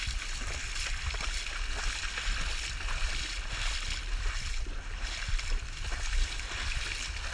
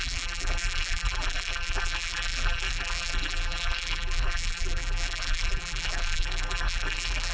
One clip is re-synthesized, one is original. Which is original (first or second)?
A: first